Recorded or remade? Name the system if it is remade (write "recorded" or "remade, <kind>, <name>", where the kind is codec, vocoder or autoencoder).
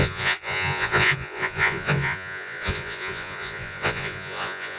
remade, vocoder, Vocos